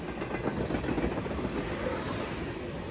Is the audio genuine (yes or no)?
yes